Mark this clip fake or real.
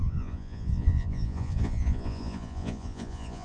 fake